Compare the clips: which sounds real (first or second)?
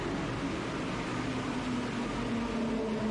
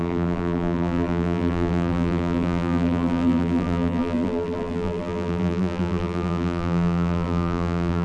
first